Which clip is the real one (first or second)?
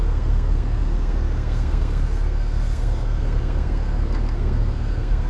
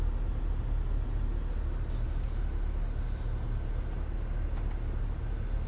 second